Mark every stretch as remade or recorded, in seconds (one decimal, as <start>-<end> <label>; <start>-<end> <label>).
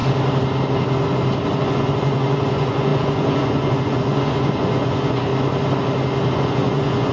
0.0-1.6 recorded; 1.6-5.3 remade; 5.3-6.3 recorded; 6.3-7.1 remade